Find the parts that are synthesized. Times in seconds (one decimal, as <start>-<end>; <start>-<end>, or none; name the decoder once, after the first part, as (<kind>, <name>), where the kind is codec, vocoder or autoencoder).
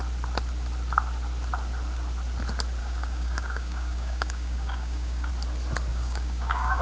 2.8-5.3 (codec, DAC); 5.9-6.8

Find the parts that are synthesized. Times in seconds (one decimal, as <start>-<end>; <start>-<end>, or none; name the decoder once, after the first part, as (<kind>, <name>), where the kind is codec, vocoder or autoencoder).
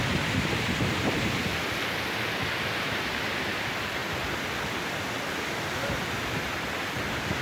none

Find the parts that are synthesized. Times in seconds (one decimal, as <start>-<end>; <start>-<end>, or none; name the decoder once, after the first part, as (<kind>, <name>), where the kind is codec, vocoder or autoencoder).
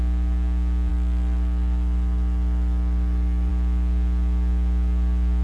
0.9-3.5 (autoencoder, DAC-VAE)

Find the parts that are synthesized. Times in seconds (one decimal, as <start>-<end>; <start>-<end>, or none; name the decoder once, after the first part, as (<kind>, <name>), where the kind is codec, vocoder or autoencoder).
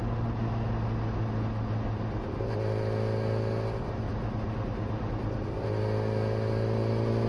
none